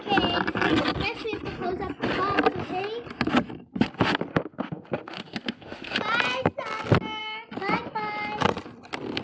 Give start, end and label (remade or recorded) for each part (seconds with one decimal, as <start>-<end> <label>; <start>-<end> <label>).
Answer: 0.0-4.3 recorded; 4.3-6.0 remade; 6.0-9.2 recorded

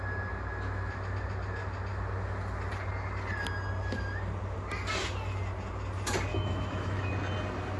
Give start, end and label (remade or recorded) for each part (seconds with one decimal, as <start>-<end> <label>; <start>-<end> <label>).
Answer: 0.0-6.3 recorded; 6.3-7.1 remade; 7.1-7.8 recorded

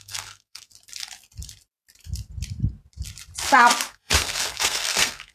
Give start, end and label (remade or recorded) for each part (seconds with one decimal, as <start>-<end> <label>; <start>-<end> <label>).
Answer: 0.0-0.7 remade; 0.7-3.9 recorded; 3.9-5.3 remade